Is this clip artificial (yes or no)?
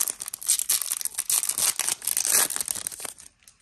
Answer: no